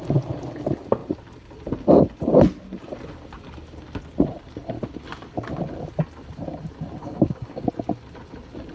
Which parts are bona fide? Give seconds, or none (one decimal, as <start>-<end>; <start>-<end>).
0.0-7.0; 7.6-8.7